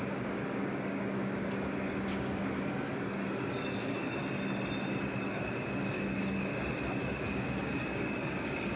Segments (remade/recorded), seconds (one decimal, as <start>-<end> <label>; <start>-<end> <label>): 0.0-4.2 remade; 4.2-5.3 recorded; 5.3-6.5 remade; 6.5-7.0 recorded; 7.0-8.8 remade